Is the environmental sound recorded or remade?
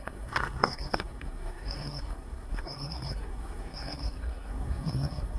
remade